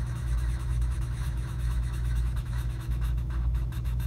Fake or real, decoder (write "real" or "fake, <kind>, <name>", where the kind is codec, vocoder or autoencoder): fake, autoencoder, DAC-VAE